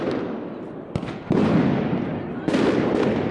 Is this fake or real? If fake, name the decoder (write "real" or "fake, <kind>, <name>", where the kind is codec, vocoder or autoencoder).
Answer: real